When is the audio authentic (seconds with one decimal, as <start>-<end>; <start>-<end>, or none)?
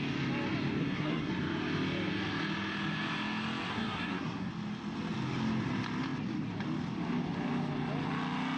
0.0-0.8; 1.3-3.7; 4.5-8.6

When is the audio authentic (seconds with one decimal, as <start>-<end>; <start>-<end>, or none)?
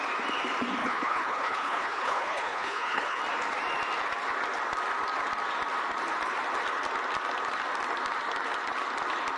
0.0-0.8; 3.2-9.4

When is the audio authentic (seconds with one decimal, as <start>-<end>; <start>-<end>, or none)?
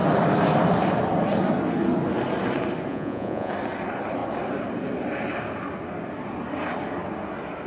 0.0-2.9; 3.5-7.7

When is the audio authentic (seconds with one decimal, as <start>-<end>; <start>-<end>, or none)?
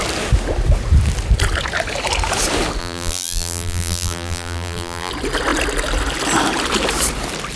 0.0-2.8; 5.1-7.6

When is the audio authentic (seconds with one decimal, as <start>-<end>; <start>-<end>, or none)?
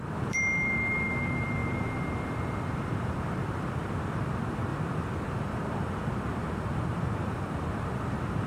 none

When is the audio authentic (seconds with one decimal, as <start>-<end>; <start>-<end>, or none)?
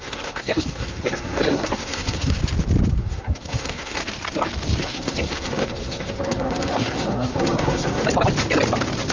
2.4-2.9; 4.0-4.8; 8.0-9.1